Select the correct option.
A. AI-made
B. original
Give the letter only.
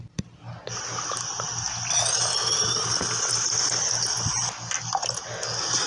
B